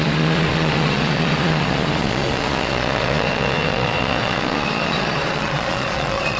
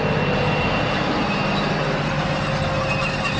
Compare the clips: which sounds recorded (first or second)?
second